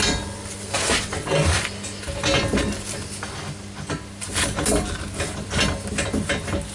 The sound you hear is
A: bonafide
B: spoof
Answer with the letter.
A